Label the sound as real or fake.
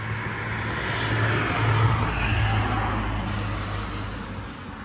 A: real